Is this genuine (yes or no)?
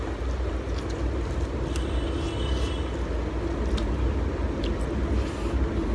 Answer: yes